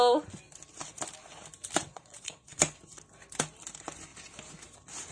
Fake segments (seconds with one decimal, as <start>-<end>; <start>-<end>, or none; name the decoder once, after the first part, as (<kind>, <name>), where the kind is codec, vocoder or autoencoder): 1.9-2.6 (vocoder, Vocos)